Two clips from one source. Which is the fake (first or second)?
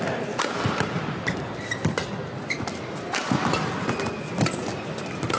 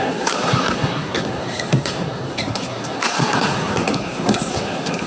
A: second